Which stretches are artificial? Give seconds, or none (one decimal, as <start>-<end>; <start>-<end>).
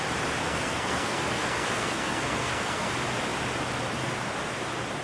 0.4-2.9